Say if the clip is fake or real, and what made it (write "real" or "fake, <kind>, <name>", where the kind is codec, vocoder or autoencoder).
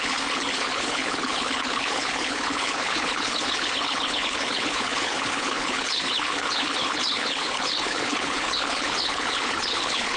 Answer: fake, codec, HILCodec